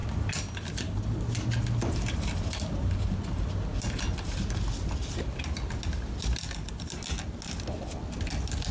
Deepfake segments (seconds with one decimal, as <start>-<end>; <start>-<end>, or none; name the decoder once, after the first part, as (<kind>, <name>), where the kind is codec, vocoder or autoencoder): none